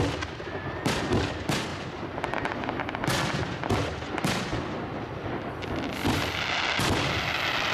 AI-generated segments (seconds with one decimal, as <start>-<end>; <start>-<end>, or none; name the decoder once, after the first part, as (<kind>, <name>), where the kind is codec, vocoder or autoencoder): none